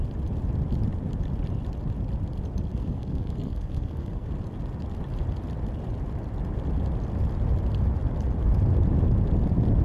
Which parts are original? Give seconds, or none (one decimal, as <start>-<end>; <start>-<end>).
0.0-2.7; 4.3-9.8